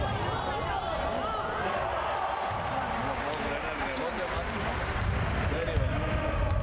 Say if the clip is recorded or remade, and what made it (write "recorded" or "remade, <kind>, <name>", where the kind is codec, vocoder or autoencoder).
recorded